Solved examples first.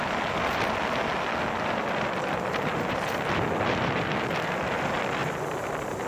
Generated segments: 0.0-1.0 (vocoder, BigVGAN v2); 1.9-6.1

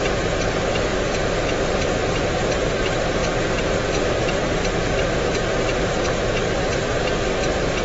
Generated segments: 0.0-0.9 (vocoder, BigVGAN v2); 1.7-6.9

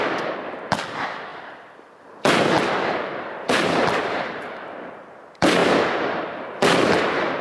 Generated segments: 1.3-5.0 (vocoder, BigVGAN v2)

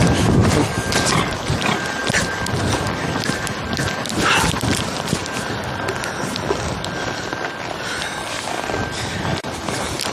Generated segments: none

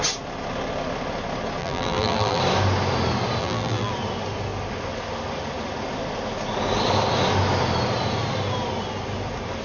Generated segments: 1.6-2.4 (vocoder, BigVGAN v2); 3.4-3.9

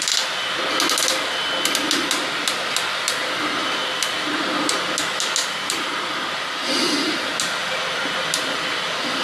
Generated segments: 5.4-7.1 (vocoder, BigVGAN v2)

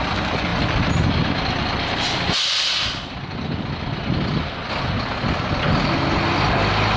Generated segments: 0.5-4.7 (vocoder, BigVGAN v2)

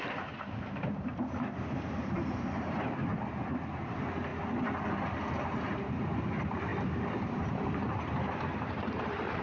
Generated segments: 0.0-3.1 (vocoder, BigVGAN v2); 3.7-4.3; 5.3-9.4